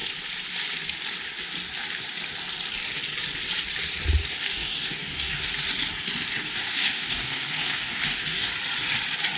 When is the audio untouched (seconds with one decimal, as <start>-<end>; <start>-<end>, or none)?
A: 0.0-4.3; 5.5-6.3; 8.5-9.4